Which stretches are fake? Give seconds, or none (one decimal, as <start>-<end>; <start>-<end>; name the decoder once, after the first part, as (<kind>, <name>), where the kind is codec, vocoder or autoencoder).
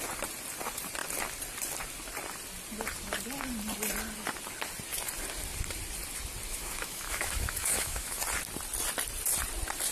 6.5-8.2 (autoencoder, DAC-VAE)